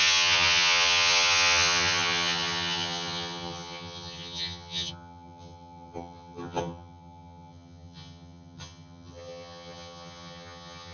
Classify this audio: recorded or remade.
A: remade